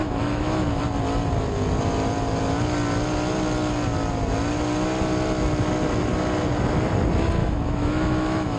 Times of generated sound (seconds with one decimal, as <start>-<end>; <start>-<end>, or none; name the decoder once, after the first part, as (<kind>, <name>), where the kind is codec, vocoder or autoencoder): 0.0-0.8 (autoencoder, DAC-VAE); 7.4-8.6